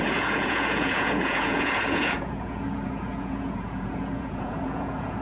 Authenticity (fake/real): fake